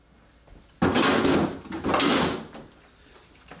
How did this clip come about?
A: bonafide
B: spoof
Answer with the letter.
A